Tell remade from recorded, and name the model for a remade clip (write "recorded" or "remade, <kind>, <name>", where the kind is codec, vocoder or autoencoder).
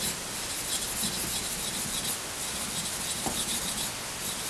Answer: recorded